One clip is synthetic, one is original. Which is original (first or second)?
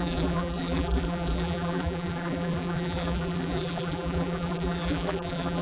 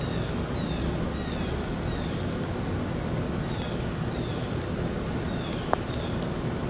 second